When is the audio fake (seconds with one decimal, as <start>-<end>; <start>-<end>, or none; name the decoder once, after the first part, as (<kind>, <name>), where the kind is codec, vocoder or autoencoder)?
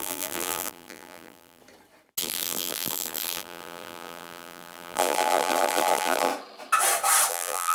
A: 0.0-1.6 (vocoder, BigVGAN v2); 2.2-6.3; 7.3-7.7